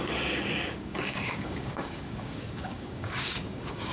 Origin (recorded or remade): remade